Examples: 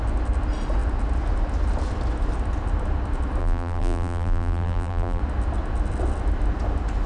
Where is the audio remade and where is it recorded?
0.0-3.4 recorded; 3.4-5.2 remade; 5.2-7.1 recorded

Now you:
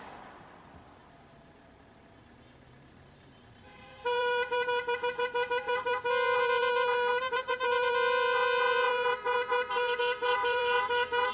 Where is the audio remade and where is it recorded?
0.0-11.3 remade

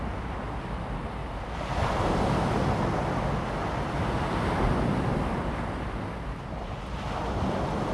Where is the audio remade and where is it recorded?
0.0-1.2 recorded; 1.2-2.6 remade; 2.6-7.9 recorded

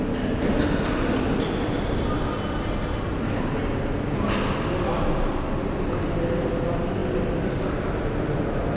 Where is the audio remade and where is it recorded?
0.0-8.8 recorded

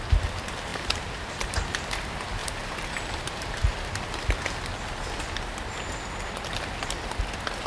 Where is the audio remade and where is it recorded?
0.0-0.7 recorded; 0.7-1.8 remade; 1.8-2.4 recorded; 2.4-3.0 remade; 3.0-7.7 recorded

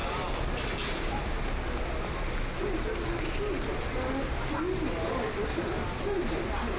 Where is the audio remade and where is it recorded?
0.0-6.8 recorded

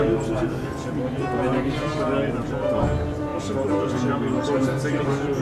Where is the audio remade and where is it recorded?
0.0-5.4 recorded

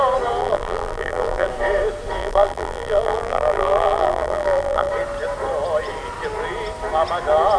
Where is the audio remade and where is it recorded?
0.0-0.4 recorded; 0.4-1.5 remade; 1.5-2.2 recorded; 2.2-4.9 remade; 4.9-7.6 recorded